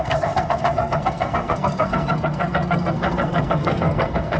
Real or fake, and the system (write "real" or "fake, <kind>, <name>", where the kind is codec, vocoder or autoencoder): fake, codec, SNAC